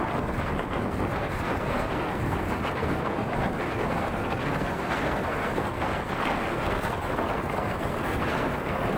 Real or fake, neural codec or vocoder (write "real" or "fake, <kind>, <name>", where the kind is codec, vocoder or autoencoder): fake, codec, SNAC